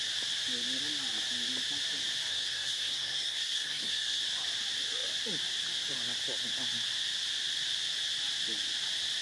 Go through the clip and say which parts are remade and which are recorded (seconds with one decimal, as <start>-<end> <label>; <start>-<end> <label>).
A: 0.0-2.3 recorded; 2.3-4.2 remade; 4.2-9.2 recorded